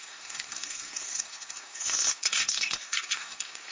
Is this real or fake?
fake